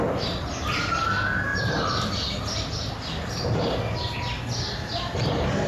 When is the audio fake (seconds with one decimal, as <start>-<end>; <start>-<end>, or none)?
none